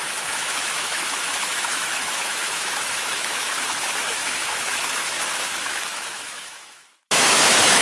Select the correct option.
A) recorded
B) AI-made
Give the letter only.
B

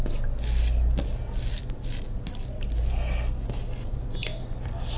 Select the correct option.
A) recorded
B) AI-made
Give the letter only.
A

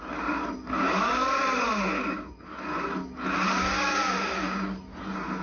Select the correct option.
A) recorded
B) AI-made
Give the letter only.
A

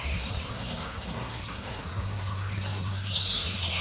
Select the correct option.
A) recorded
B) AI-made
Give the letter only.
B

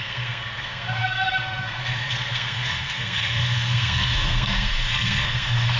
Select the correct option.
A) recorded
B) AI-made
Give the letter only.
B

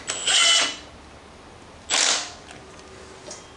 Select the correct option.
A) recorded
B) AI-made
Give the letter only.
A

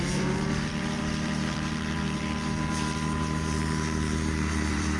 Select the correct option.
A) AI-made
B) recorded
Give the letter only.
A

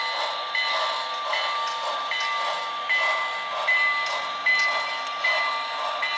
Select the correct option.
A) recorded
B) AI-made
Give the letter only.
A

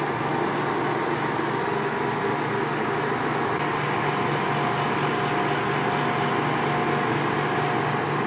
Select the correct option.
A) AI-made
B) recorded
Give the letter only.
B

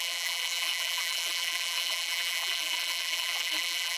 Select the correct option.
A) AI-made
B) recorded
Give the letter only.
A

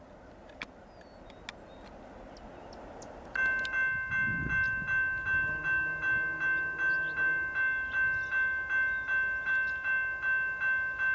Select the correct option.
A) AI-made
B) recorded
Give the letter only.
B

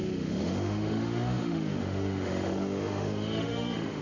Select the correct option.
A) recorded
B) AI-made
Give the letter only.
B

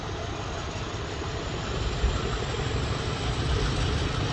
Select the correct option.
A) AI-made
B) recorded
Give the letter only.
B